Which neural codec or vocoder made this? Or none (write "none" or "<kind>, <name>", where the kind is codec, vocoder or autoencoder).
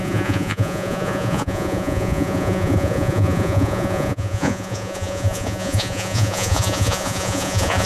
vocoder, Vocos